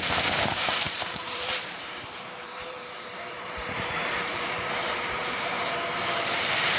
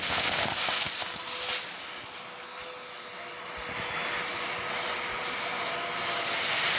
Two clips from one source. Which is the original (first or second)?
second